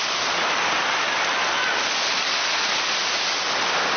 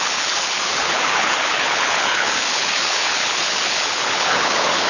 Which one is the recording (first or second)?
first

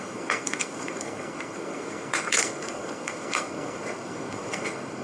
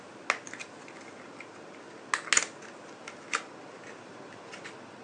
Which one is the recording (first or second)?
second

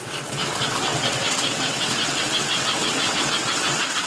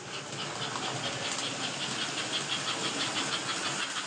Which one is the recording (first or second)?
second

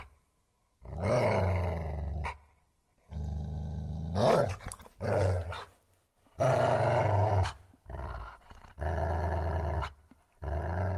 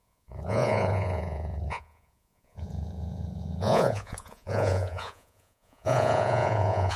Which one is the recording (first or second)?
first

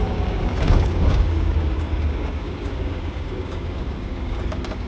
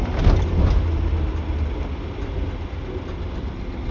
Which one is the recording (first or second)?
second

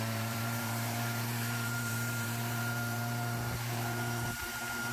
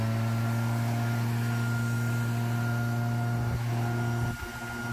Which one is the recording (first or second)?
second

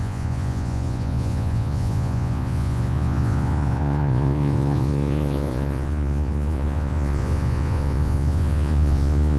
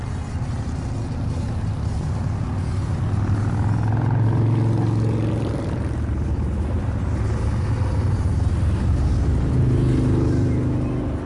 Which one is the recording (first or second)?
second